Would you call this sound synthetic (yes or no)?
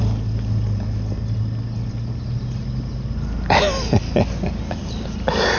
no